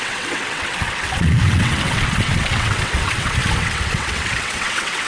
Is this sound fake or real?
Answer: fake